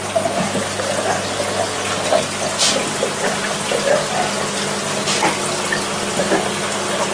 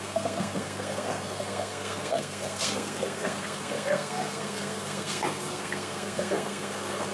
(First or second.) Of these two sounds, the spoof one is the second